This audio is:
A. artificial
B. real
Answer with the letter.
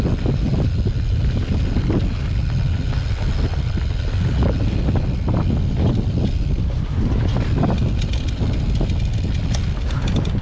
B